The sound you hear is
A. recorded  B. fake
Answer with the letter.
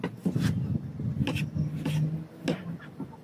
A